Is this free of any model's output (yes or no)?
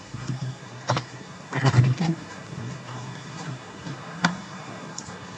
no